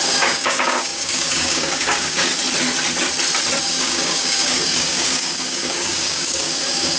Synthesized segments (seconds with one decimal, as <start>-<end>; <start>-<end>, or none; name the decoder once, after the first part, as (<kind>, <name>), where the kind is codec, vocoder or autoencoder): 0.0-2.3 (codec, DAC); 3.6-7.0